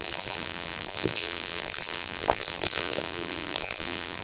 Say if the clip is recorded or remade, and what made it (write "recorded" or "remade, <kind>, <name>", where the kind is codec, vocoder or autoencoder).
remade, vocoder, BigVGAN v2